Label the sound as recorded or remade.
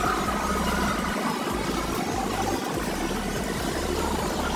recorded